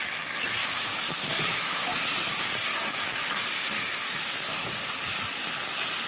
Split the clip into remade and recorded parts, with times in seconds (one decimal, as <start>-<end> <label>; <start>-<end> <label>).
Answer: 0.0-0.6 recorded; 0.6-2.1 remade; 2.1-2.7 recorded; 2.7-3.4 remade; 3.4-4.0 recorded; 4.0-4.7 remade; 4.7-6.1 recorded